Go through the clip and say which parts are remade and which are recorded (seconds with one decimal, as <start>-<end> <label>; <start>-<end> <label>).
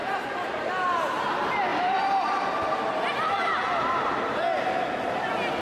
0.0-1.2 remade; 1.2-1.7 recorded; 1.7-4.3 remade; 4.3-5.6 recorded